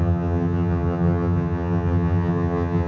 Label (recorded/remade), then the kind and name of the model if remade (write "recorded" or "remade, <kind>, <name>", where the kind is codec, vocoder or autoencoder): remade, vocoder, HiFi-GAN